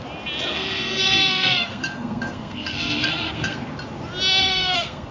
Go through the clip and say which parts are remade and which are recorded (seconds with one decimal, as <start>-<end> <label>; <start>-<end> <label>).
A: 0.0-0.5 recorded; 0.5-3.6 remade; 3.6-4.4 recorded; 4.4-5.1 remade